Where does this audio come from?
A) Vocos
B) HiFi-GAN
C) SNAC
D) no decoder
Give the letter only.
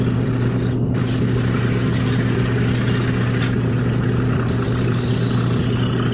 D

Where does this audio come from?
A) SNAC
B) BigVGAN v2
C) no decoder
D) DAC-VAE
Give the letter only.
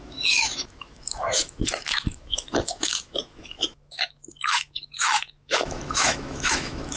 D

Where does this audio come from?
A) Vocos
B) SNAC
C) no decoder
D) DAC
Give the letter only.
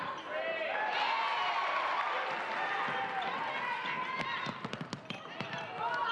C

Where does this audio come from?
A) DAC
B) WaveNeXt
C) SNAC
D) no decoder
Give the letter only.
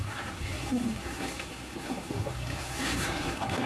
C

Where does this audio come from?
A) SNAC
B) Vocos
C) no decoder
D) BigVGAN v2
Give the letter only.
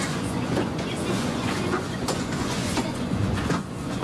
B